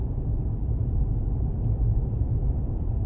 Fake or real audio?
fake